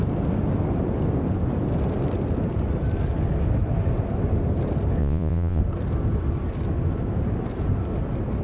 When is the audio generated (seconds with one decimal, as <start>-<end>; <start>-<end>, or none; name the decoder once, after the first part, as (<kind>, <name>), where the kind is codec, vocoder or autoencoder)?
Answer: 5.0-5.6 (vocoder, Vocos)